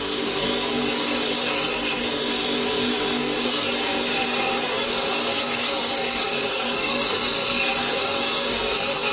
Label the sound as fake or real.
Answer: fake